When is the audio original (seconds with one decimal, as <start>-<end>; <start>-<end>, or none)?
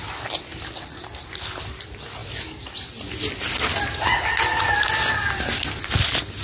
0.0-6.4